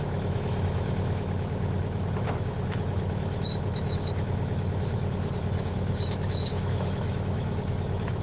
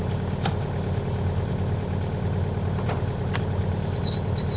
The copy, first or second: first